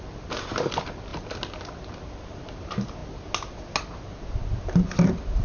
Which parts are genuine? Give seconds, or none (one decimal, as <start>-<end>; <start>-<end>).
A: 0.0-5.4